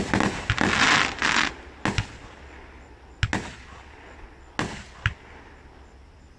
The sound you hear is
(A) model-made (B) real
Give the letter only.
B